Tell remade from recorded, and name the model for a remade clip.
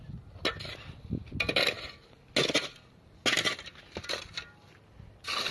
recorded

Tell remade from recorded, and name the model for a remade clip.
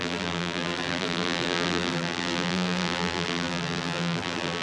remade, vocoder, BigVGAN v2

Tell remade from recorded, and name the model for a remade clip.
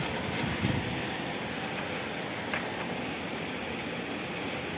recorded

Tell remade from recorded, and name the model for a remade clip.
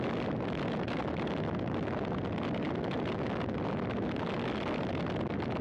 recorded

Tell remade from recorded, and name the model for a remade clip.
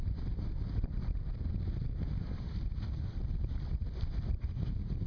remade, vocoder, BigVGAN v2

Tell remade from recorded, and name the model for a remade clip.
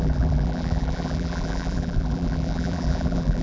remade, vocoder, BigVGAN v2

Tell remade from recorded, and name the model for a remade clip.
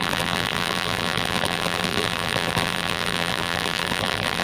remade, vocoder, BigVGAN v2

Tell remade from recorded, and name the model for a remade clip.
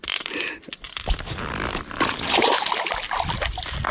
recorded